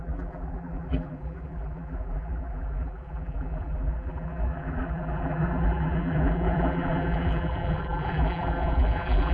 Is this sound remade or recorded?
remade